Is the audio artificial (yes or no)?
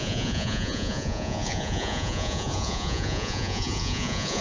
yes